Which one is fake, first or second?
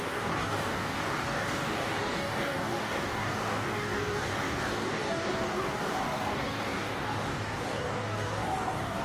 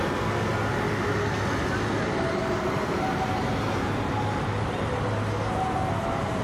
first